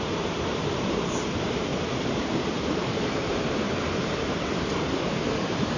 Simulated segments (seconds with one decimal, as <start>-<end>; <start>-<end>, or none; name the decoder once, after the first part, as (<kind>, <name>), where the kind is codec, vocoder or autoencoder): 0.0-5.8 (vocoder, BigVGAN v2)